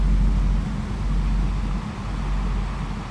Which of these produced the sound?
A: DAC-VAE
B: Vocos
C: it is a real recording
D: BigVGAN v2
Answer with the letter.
C